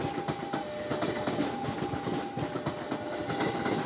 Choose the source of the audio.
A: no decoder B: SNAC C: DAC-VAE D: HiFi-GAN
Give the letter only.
A